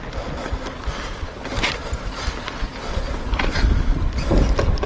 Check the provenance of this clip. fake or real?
real